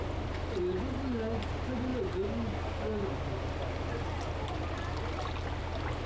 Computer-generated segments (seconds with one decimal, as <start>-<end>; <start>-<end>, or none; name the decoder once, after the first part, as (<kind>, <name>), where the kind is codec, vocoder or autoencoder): none